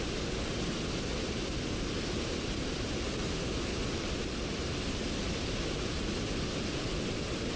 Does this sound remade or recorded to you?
recorded